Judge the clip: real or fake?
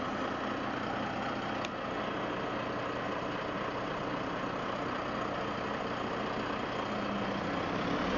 real